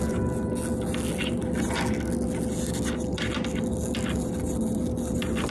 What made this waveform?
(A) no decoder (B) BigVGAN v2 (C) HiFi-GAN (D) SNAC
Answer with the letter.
A